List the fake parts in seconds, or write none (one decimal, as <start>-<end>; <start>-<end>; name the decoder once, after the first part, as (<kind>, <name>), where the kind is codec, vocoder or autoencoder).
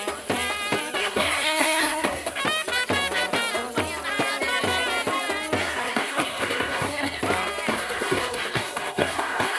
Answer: 1.0-2.4 (codec, SNAC); 5.6-7.2; 7.7-9.6